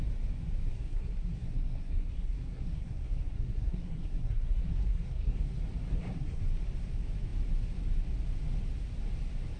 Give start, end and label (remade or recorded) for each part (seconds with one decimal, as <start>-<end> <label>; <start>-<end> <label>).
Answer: 0.0-0.7 recorded; 0.7-5.5 remade; 5.5-5.9 recorded; 5.9-6.4 remade; 6.4-9.6 recorded